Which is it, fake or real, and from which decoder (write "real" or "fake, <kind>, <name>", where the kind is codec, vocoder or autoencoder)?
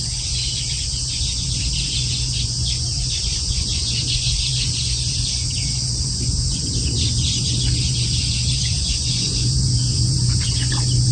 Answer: fake, vocoder, Vocos